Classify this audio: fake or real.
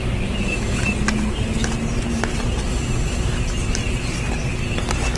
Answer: real